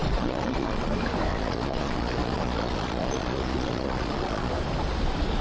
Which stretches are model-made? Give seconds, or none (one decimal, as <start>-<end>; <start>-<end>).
0.0-0.9; 1.3-4.5